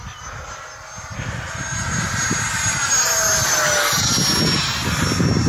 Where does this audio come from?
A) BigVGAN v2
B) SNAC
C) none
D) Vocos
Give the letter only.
C